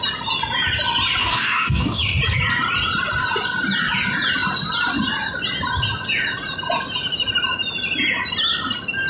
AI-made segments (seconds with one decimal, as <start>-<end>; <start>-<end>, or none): 1.2-2.0